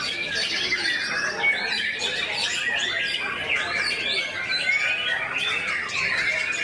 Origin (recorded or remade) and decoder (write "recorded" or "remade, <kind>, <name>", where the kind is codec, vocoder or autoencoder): recorded